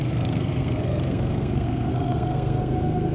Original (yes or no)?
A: no